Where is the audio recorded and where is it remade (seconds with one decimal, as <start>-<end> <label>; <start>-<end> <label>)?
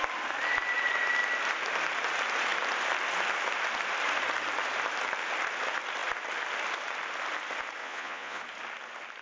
0.0-7.8 recorded; 7.8-8.4 remade; 8.4-9.2 recorded